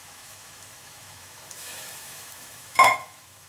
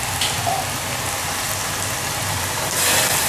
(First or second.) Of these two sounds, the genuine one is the second